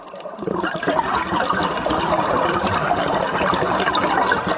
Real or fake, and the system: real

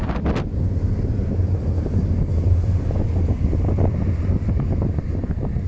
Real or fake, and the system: real